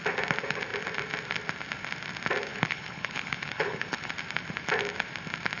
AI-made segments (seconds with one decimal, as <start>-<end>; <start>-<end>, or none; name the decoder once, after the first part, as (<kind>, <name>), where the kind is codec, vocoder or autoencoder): 2.5-4.1 (codec, HILCodec)